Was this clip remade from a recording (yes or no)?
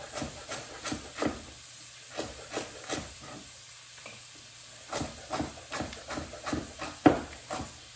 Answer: no